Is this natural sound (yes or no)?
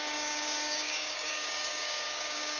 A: no